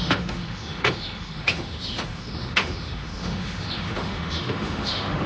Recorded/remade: remade